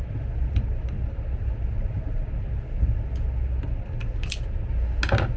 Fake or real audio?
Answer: real